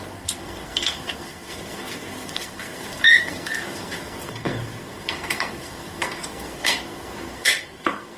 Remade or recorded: remade